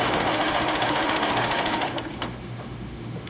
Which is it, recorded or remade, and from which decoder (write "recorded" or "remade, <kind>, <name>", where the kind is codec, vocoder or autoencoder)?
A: remade, autoencoder, DAC-VAE